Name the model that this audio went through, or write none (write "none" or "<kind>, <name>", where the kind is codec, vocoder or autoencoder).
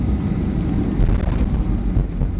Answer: none